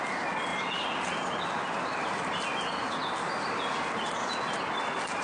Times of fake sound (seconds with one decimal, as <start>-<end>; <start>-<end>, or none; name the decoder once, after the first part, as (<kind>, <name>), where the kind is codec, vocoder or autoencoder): 0.5-1.4 (vocoder, BigVGAN v2)